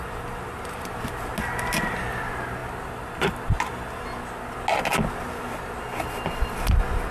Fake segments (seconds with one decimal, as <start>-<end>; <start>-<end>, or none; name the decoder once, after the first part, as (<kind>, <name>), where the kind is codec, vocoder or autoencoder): none